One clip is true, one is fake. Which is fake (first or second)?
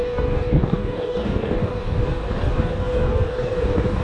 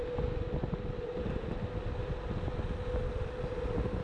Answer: first